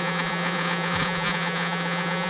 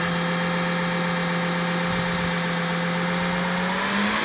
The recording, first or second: second